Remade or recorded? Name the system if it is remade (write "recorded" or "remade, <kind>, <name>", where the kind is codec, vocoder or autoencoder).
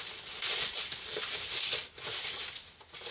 recorded